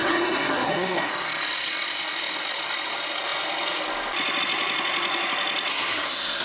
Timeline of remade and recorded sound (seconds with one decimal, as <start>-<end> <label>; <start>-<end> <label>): 0.0-1.1 remade; 1.1-5.7 recorded; 5.7-6.4 remade

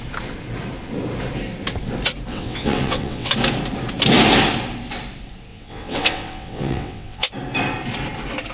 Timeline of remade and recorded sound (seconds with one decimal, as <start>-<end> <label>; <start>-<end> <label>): 0.0-2.3 recorded; 2.3-3.3 remade; 3.3-5.5 recorded; 5.5-7.3 remade; 7.3-8.5 recorded

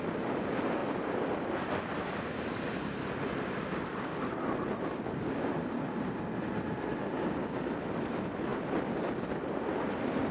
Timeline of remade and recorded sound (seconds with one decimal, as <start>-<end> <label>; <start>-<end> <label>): 0.0-0.8 recorded; 0.8-1.5 remade; 1.5-10.3 recorded